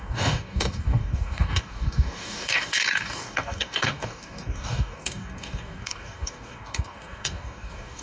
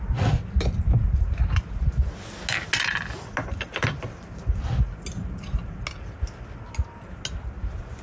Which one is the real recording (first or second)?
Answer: second